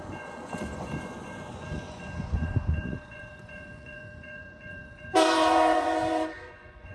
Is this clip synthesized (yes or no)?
yes